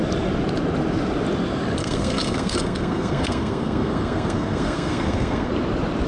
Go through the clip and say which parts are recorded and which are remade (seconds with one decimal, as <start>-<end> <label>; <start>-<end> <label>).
0.0-1.8 recorded; 1.8-5.5 remade; 5.5-6.1 recorded

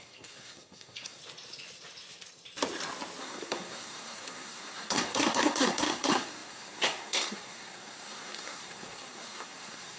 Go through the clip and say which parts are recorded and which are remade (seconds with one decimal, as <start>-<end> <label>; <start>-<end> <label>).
0.0-1.2 remade; 1.2-3.2 recorded; 3.2-10.0 remade

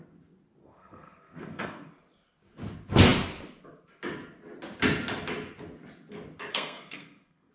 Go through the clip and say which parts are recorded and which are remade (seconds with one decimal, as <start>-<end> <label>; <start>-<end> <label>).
0.0-0.6 recorded; 0.6-1.9 remade; 1.9-6.5 recorded; 6.5-7.5 remade

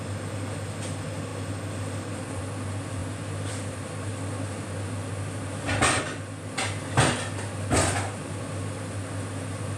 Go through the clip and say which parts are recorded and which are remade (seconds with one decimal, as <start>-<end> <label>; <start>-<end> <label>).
0.0-9.8 recorded

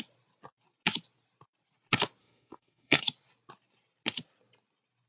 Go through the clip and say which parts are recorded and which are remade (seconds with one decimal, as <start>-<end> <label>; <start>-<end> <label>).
0.0-2.2 recorded; 2.2-3.0 remade; 3.0-5.1 recorded